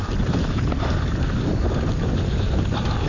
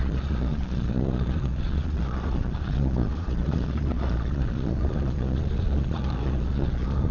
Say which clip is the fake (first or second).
second